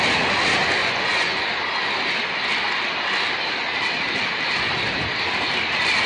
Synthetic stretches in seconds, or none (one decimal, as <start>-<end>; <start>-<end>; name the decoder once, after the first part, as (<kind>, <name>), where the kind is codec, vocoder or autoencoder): 0.8-1.5 (vocoder, Vocos)